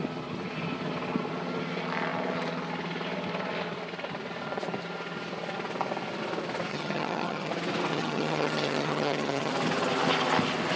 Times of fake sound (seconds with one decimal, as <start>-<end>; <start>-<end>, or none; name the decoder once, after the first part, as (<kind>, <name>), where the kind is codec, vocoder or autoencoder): 6.7-7.5 (vocoder, HiFi-GAN); 7.9-9.5